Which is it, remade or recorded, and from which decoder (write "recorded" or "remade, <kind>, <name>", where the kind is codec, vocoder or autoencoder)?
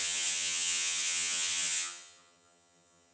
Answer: remade, vocoder, HiFi-GAN